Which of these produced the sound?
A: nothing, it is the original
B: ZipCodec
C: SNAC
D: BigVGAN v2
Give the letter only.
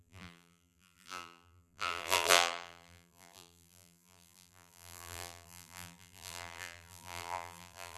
D